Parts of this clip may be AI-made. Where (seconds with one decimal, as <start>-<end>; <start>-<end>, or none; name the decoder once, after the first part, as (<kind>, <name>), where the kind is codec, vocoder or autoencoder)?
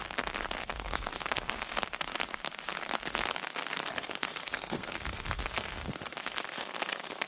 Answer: 0.6-1.7 (codec, SNAC); 4.0-7.3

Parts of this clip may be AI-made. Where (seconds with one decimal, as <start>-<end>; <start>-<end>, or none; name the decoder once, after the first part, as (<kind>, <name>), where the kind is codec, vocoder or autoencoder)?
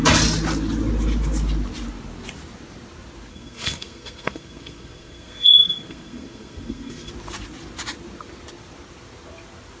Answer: 3.3-7.1 (codec, SNAC)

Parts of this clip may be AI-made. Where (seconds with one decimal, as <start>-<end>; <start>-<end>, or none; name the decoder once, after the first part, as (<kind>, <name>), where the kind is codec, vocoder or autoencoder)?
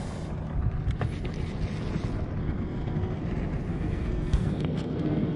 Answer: 2.4-3.2 (codec, SNAC); 3.7-5.4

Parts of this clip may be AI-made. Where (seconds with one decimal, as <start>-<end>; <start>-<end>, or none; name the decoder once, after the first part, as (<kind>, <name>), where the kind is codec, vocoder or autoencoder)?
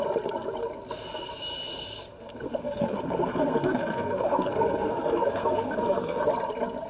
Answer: 2.1-6.2 (codec, SNAC)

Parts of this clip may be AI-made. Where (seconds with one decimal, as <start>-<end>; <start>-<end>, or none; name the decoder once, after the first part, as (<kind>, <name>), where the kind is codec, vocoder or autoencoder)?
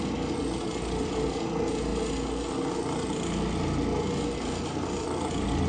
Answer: none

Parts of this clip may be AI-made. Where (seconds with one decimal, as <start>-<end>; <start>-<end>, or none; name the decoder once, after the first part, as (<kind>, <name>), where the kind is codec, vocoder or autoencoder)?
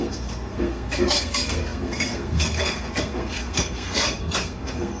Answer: 0.0-5.0 (codec, SNAC)